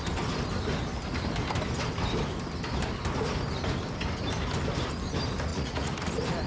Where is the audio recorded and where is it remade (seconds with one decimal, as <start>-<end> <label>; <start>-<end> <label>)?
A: 0.0-5.5 recorded; 5.5-6.1 remade; 6.1-6.5 recorded